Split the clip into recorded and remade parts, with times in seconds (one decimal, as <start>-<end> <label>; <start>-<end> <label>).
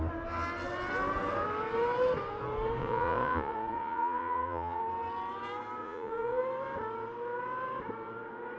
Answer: 0.0-2.8 recorded; 2.8-4.8 remade; 4.8-5.8 recorded; 5.8-6.4 remade; 6.4-8.6 recorded